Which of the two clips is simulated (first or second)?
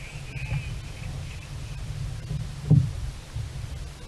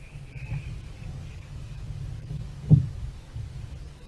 second